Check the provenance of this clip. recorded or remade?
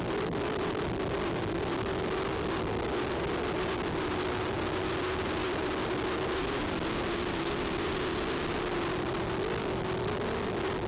recorded